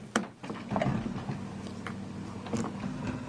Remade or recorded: recorded